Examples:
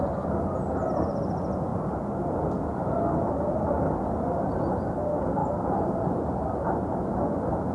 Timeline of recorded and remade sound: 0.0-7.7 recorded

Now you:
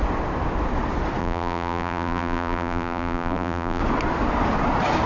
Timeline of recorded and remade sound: 0.0-1.2 recorded; 1.2-3.8 remade; 3.8-5.1 recorded

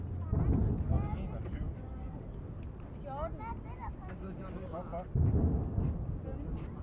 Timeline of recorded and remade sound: 0.0-0.6 recorded; 0.6-1.8 remade; 1.8-6.8 recorded

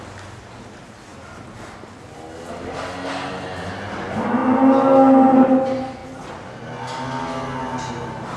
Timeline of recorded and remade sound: 0.0-8.4 recorded